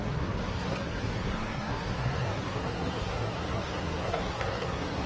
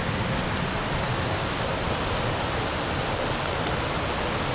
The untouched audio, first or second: second